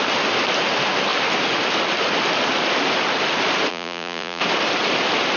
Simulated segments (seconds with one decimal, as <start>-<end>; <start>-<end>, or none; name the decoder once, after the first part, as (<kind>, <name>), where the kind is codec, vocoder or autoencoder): 3.7-4.4 (vocoder, Vocos)